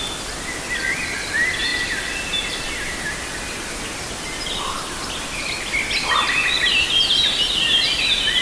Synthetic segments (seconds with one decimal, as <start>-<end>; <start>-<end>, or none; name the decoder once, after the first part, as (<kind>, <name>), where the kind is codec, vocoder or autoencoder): none